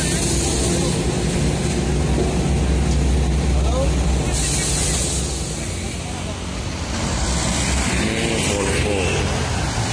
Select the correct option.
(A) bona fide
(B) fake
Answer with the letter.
A